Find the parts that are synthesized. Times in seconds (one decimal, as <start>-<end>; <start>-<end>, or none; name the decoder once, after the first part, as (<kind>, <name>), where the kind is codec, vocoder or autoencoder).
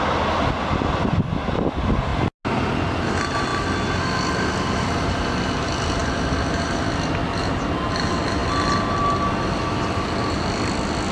none